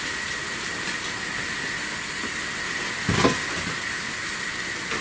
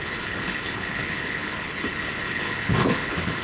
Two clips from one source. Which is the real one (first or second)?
first